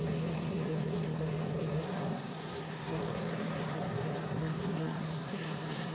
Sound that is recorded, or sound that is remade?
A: remade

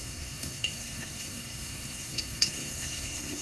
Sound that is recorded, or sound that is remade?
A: remade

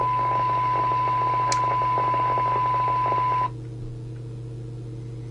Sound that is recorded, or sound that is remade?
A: recorded